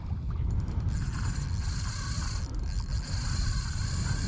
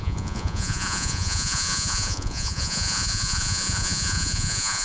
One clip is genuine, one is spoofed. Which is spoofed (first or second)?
second